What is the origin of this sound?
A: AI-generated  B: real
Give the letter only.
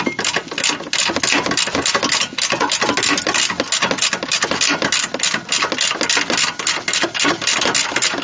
B